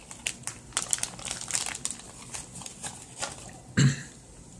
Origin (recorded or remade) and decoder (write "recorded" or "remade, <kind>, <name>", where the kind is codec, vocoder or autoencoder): recorded